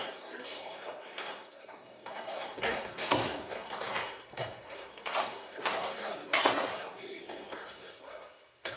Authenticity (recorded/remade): remade